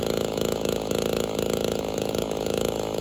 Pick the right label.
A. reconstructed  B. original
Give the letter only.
A